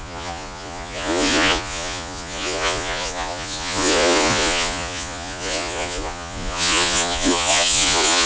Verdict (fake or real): fake